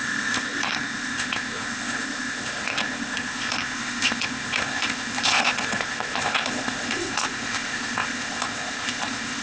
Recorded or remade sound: remade